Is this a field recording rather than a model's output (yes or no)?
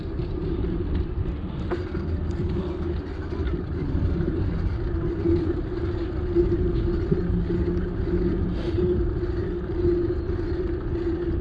yes